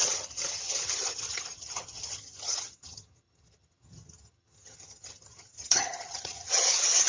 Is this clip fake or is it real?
fake